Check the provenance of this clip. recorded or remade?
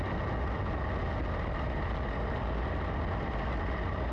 recorded